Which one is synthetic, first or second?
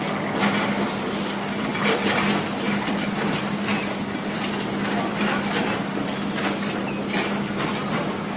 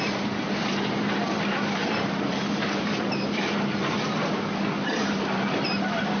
second